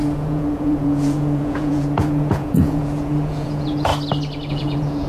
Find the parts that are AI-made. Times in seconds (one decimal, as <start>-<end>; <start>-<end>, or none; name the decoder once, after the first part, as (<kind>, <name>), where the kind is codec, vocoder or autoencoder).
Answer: 0.0-3.9 (vocoder, Vocos); 4.5-5.1